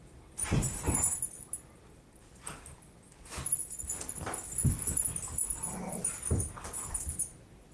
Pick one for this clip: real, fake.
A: real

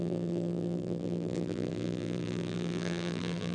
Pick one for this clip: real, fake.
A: fake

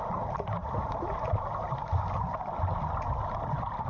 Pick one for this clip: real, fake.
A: fake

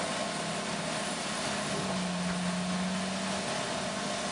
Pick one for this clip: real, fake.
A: real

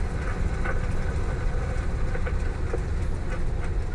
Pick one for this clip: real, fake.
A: real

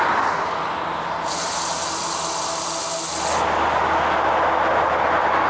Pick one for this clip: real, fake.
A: real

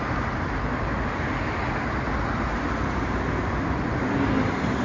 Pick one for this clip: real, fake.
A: real